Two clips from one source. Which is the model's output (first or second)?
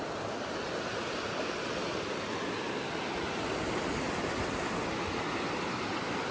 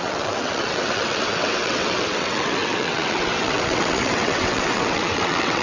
second